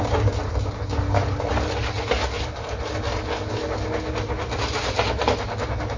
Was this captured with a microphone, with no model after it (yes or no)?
yes